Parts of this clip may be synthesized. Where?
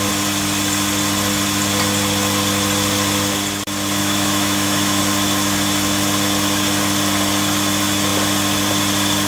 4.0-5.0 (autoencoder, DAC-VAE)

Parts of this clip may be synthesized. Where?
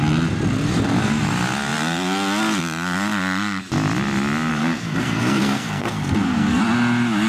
4.5-6.6 (codec, SNAC)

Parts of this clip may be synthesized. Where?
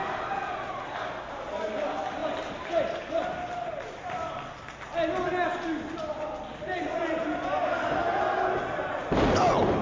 none